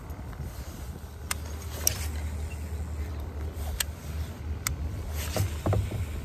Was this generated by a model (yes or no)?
no